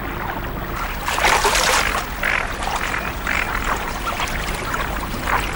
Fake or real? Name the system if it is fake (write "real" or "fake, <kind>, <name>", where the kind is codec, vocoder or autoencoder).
real